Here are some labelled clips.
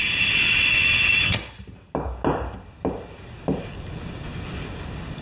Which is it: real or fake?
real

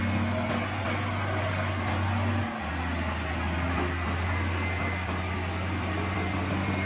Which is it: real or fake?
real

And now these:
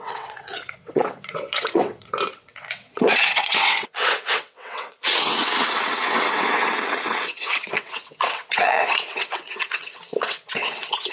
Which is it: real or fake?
fake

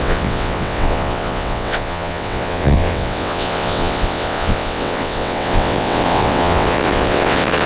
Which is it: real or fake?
fake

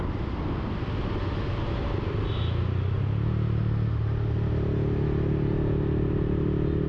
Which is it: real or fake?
real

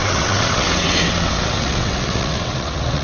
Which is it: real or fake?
fake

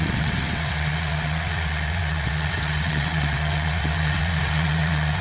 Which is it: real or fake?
fake